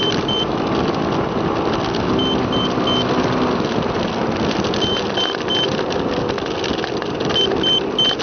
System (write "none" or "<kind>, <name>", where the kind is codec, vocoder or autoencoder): none